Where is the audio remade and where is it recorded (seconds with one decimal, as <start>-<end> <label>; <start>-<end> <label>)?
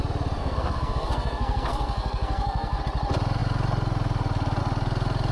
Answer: 0.0-0.4 recorded; 0.4-2.8 remade; 2.8-5.3 recorded